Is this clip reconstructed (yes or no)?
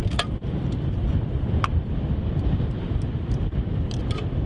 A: no